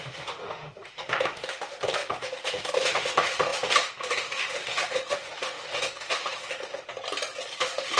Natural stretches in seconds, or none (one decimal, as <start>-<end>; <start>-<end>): 6.9-7.6